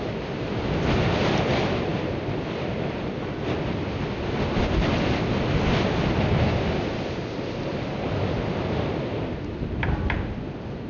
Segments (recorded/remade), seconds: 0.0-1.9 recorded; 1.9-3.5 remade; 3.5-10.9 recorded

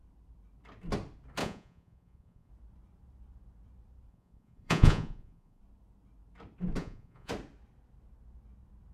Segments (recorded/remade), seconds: 0.0-1.4 recorded; 1.4-2.5 remade; 2.5-4.1 recorded; 4.1-5.6 remade; 5.6-6.8 recorded; 6.8-7.3 remade; 7.3-8.9 recorded

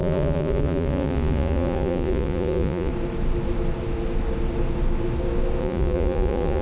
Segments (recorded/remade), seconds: 0.0-2.9 remade; 2.9-5.6 recorded; 5.6-6.6 remade

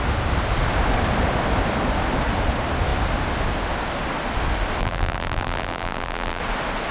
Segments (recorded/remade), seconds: 0.0-4.8 recorded; 4.8-6.4 remade; 6.4-6.9 recorded

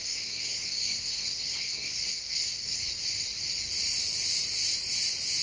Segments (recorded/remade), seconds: 0.0-2.8 remade; 2.8-5.4 recorded

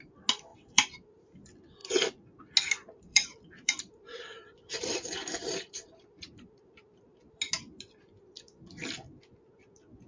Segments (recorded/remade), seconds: 0.0-0.5 recorded; 0.5-1.2 remade; 1.2-2.8 recorded; 2.8-7.4 remade; 7.4-10.1 recorded

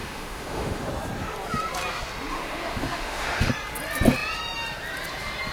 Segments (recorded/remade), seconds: 0.0-0.9 remade; 0.9-2.3 recorded; 2.3-3.5 remade; 3.5-5.5 recorded

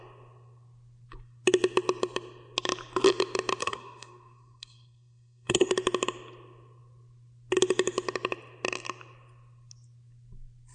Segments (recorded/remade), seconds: 0.0-3.6 recorded; 3.6-5.7 remade; 5.7-10.7 recorded